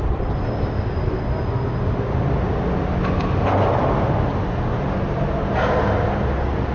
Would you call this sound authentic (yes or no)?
yes